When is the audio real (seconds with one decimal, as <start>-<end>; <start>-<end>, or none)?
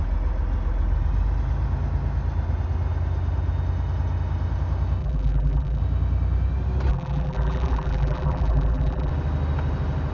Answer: 0.0-5.0; 5.8-6.9; 9.1-10.1